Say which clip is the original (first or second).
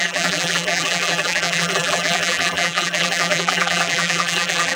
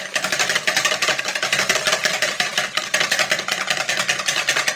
second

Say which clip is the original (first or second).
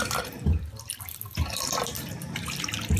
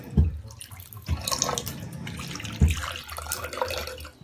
second